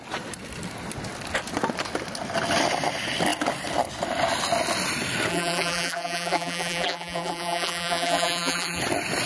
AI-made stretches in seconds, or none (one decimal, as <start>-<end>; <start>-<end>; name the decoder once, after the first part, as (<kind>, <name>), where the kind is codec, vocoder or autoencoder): 5.3-8.8 (vocoder, BigVGAN v2)